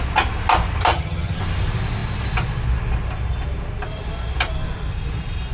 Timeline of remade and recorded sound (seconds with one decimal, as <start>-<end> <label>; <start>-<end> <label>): 0.0-0.9 recorded; 0.9-1.4 remade; 1.4-5.5 recorded

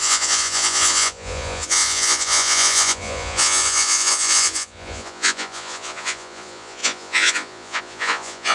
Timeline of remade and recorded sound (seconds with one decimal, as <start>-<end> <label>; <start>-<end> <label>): 0.0-8.5 remade

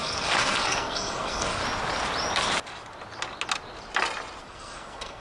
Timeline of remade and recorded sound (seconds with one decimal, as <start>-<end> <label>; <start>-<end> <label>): 0.0-1.6 remade; 1.6-4.4 recorded; 4.4-5.2 remade

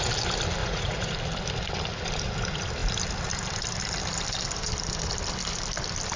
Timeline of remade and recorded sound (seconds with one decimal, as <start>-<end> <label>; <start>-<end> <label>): 0.0-0.6 recorded; 0.6-1.1 remade; 1.1-6.2 recorded

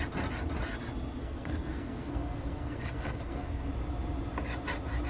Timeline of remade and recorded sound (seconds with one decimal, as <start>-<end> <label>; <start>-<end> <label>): 0.0-1.2 recorded; 1.2-3.7 remade; 3.7-5.1 recorded